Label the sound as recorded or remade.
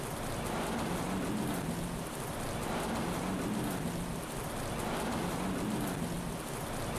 remade